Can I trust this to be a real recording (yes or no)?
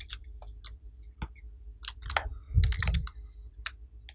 yes